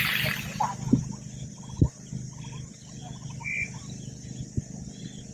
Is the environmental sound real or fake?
real